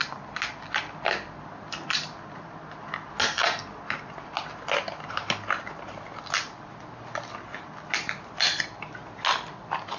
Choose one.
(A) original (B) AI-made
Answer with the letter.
A